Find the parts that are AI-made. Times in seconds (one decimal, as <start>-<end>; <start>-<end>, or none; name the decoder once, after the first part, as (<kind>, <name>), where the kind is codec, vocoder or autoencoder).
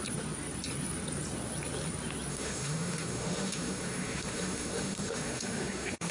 2.3-6.1 (autoencoder, DAC-VAE)